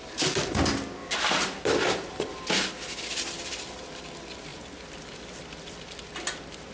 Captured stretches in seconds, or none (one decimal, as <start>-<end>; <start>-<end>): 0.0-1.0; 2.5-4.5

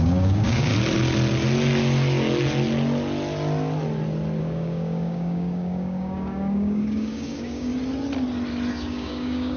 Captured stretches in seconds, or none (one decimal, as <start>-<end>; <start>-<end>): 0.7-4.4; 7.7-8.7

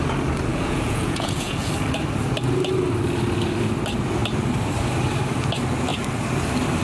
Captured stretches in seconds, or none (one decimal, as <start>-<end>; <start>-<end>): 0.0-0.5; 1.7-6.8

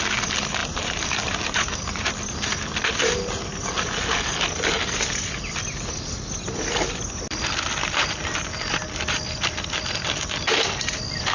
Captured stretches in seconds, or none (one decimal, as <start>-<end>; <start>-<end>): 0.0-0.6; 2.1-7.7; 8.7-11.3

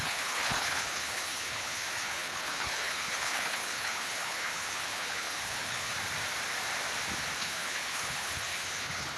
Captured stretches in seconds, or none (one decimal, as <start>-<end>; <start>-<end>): 5.9-7.4

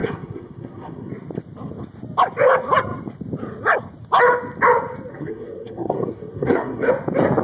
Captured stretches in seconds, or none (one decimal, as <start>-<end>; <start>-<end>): 1.1-5.1; 6.9-7.4

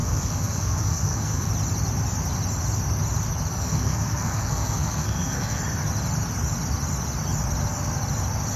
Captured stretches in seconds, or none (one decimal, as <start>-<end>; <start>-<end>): 1.5-3.5; 5.6-8.6

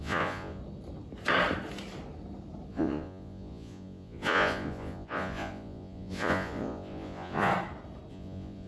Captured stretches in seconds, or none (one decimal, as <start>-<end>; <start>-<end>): 0.6-2.7; 7.5-8.1